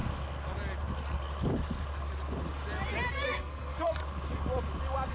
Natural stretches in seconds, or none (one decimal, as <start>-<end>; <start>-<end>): 0.0-3.1; 4.0-5.1